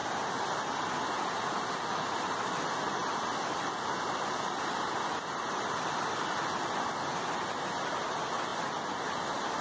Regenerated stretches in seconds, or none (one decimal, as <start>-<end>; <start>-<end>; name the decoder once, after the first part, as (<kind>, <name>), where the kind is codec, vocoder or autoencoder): 0.0-0.6 (vocoder, BigVGAN v2); 3.0-3.7